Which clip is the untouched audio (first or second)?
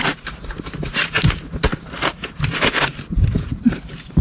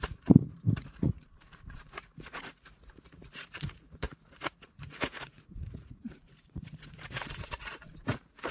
first